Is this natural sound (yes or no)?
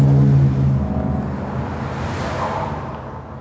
yes